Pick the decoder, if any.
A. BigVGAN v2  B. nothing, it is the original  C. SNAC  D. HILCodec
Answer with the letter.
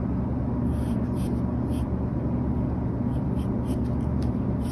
B